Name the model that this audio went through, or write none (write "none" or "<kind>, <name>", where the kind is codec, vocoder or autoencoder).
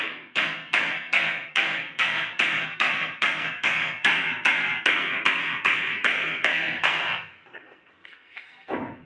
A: codec, SNAC